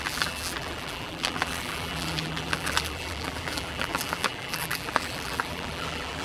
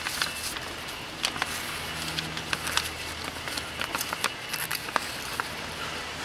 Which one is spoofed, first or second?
first